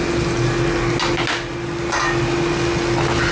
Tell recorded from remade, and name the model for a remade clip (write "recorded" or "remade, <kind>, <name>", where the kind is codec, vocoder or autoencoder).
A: recorded